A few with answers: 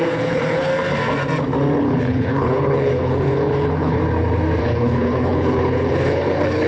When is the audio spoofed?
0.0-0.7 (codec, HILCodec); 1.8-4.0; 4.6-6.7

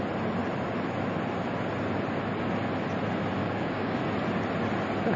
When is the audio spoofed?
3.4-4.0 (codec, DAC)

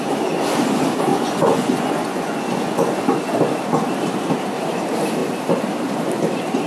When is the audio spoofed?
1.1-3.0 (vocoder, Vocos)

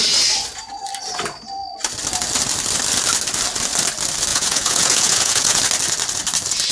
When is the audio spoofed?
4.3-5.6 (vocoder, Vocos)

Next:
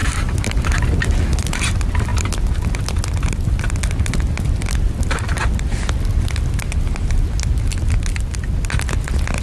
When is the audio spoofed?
none

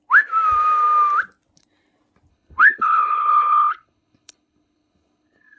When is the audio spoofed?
2.3-5.6 (codec, HILCodec)